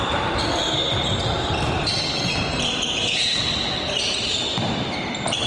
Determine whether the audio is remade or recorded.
recorded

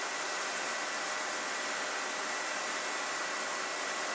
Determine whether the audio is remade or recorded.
remade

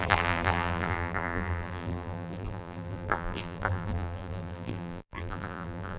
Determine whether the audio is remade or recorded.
remade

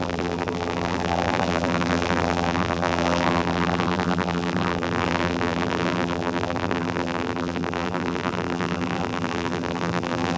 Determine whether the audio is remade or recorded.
remade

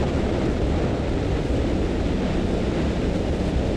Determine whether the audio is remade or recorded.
recorded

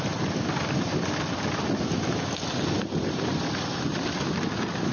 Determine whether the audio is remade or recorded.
remade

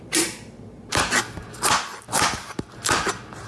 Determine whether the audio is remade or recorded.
remade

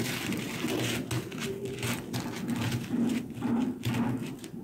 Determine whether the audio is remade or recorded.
recorded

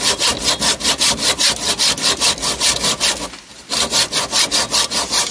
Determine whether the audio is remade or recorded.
recorded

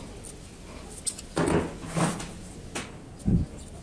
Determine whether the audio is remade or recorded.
recorded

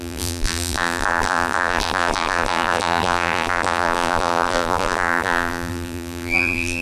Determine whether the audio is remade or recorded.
remade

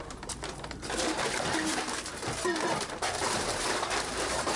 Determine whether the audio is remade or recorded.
remade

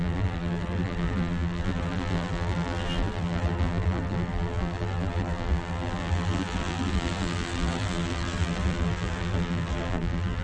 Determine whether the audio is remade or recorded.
remade